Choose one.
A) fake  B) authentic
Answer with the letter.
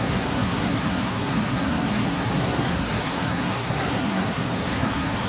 A